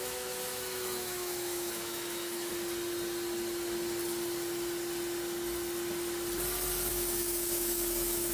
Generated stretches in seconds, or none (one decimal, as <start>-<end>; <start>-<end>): 0.0-2.5; 6.9-8.3